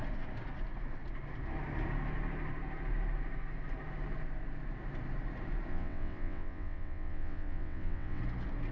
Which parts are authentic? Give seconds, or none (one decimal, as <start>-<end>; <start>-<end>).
0.0-5.7; 8.2-8.7